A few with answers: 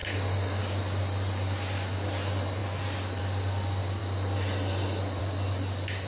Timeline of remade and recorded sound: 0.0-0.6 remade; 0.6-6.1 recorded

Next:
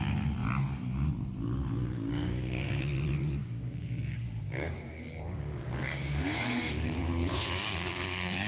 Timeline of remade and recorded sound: 0.0-1.8 recorded; 1.8-2.8 remade; 2.8-3.4 recorded; 3.4-8.5 remade

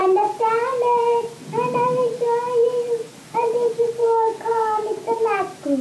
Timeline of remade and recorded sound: 0.0-4.0 recorded; 4.0-5.2 remade; 5.2-5.8 recorded

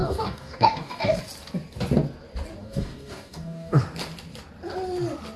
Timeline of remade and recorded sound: 0.0-1.2 remade; 1.2-2.6 recorded; 2.6-3.8 remade; 3.8-5.4 recorded